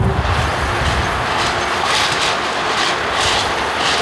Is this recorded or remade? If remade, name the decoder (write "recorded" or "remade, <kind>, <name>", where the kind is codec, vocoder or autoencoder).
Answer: recorded